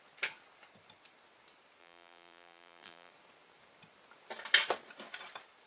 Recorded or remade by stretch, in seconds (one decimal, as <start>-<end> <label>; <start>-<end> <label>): 0.0-1.8 recorded; 1.8-3.1 remade; 3.1-5.7 recorded